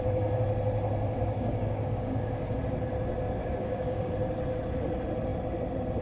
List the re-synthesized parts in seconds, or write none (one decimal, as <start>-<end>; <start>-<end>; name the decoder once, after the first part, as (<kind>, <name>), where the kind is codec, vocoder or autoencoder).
1.2-2.6 (codec, DAC); 3.4-4.1